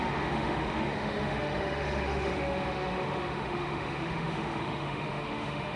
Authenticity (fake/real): fake